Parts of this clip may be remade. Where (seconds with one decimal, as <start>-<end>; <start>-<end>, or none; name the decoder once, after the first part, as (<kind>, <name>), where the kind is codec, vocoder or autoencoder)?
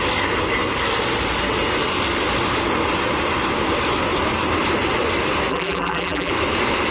5.5-6.3 (vocoder, BigVGAN v2)